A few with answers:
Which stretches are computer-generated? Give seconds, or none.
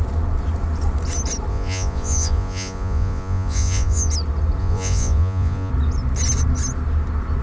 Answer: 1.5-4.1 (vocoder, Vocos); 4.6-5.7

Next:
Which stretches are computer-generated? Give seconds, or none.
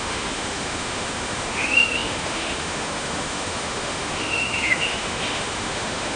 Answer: 0.0-6.2 (autoencoder, DAC-VAE)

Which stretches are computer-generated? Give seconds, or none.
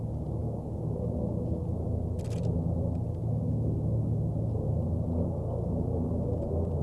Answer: none